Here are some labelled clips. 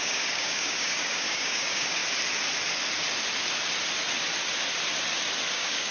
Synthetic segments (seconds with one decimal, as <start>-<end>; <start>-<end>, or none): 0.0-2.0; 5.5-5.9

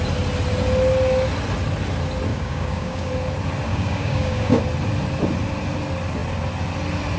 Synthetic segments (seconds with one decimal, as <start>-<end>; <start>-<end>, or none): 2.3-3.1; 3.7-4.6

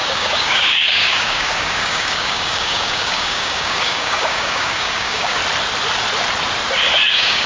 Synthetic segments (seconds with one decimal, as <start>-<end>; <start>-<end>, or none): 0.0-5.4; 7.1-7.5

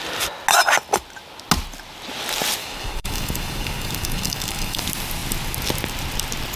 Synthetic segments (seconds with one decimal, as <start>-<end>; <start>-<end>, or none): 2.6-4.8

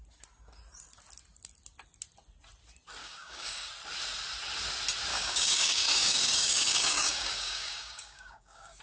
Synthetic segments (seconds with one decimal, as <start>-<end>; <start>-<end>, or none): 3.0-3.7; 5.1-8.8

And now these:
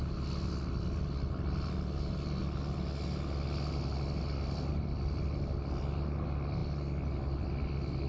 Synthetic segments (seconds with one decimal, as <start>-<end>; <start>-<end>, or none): none

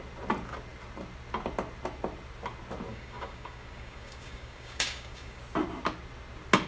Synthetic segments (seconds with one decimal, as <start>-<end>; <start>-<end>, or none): 2.9-5.4